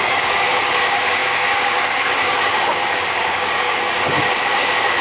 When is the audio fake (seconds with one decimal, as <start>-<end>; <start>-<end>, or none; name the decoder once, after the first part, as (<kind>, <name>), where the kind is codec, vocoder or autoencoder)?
0.0-5.0 (codec, DAC)

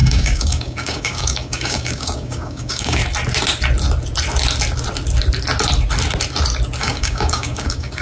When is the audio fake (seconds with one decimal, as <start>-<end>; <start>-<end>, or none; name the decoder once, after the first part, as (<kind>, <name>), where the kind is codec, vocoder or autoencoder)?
0.0-3.0 (codec, DAC); 6.8-8.0

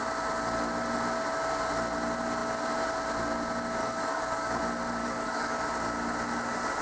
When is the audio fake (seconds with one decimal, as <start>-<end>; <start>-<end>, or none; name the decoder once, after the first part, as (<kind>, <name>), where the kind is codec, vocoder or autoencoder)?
3.8-4.6 (codec, DAC); 5.0-5.6

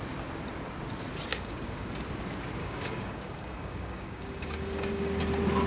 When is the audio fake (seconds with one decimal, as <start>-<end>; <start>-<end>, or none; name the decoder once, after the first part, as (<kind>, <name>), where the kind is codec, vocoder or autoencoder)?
1.3-1.9 (codec, DAC); 2.6-5.2

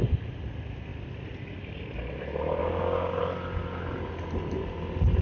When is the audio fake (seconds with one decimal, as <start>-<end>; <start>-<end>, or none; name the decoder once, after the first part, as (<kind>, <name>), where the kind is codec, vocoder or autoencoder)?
2.6-3.2 (codec, DAC)